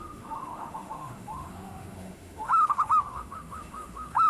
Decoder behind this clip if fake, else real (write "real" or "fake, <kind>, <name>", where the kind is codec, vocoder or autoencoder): fake, autoencoder, DAC-VAE